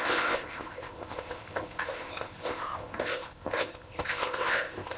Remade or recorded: remade